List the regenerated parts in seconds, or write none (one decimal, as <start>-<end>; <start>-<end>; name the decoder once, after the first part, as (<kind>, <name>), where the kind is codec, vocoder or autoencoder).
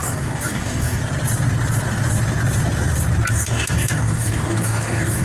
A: 0.0-1.0 (codec, DAC); 3.3-5.2